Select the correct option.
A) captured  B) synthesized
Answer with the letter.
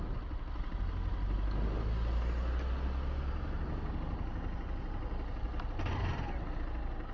A